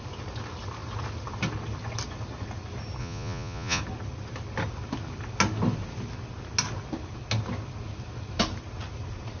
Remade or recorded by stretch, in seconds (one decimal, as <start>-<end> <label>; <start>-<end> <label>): 0.0-3.0 recorded; 3.0-3.8 remade; 3.8-9.4 recorded